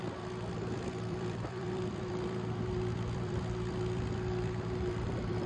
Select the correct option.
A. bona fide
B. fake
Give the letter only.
B